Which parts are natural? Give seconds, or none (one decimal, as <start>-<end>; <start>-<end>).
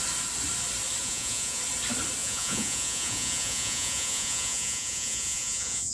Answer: 0.0-1.0; 1.6-2.2